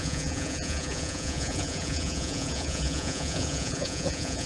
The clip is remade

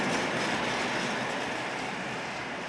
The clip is recorded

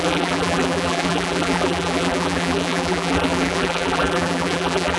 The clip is remade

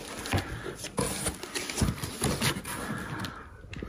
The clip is recorded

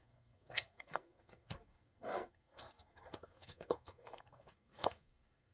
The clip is remade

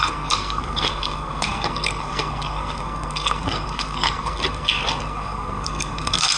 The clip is remade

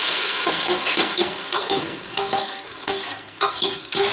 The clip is remade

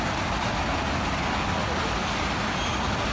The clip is recorded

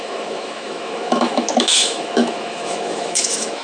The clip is remade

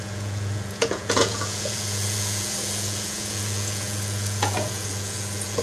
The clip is remade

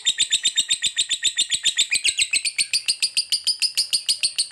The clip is recorded